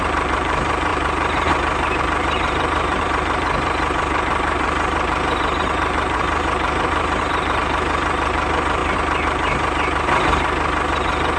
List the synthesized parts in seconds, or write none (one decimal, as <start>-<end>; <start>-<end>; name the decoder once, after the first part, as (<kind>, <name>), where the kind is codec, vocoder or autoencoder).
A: 0.0-8.8 (vocoder, BigVGAN v2)